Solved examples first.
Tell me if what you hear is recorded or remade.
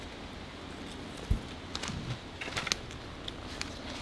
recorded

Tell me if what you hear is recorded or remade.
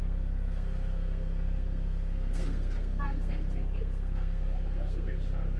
remade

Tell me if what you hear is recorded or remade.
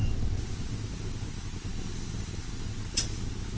recorded